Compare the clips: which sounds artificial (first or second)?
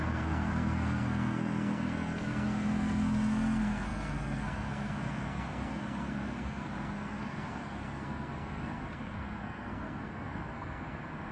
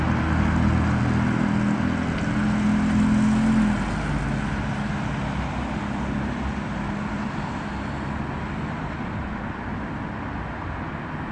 first